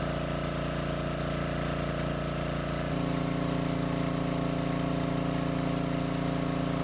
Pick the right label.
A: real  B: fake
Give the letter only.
A